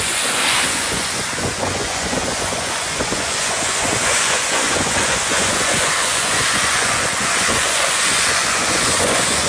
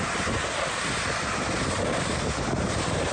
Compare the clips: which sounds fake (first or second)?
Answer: first